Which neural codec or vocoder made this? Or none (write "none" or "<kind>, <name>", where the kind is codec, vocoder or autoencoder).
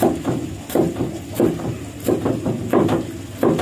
none